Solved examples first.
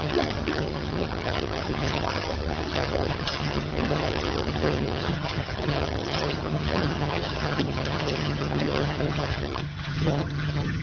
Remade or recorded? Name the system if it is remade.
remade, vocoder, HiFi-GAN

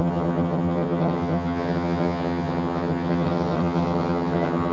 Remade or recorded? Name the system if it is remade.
remade, vocoder, HiFi-GAN